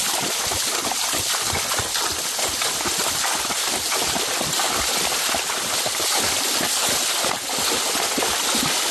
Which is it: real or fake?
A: real